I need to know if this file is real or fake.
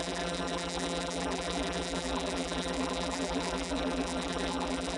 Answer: fake